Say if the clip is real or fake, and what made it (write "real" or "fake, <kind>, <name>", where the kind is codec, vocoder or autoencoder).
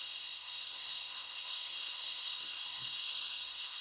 fake, codec, SNAC